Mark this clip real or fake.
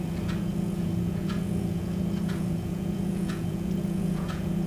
fake